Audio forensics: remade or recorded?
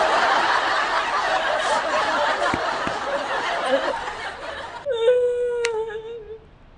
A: recorded